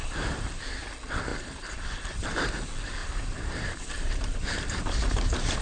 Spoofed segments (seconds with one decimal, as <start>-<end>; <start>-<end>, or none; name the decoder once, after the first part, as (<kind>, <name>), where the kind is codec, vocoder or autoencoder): 0.0-0.6 (vocoder, BigVGAN v2); 1.3-2.5; 3.0-5.6